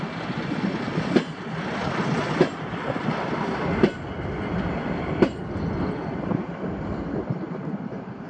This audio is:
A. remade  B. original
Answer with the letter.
B